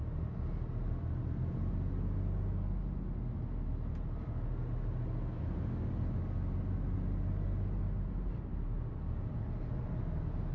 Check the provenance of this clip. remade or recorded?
recorded